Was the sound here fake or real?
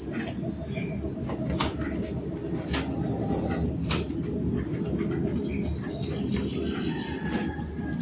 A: real